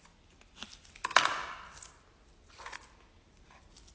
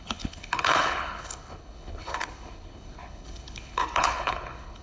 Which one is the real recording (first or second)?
first